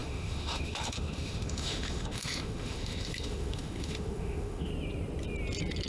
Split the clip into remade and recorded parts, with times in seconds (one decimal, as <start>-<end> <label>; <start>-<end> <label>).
0.0-4.7 remade; 4.7-5.9 recorded